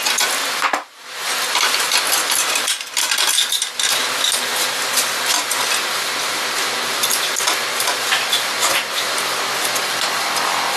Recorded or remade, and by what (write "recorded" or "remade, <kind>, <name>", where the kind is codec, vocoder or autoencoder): recorded